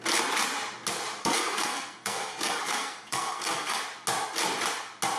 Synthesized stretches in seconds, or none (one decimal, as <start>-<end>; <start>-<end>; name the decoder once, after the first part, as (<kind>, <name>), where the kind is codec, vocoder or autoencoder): 1.2-3.8 (codec, SNAC)